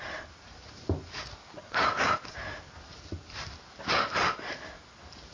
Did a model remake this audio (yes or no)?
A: no